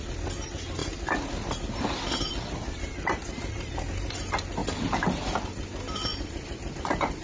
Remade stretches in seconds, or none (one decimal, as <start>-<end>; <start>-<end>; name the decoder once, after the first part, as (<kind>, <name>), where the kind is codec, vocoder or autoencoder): none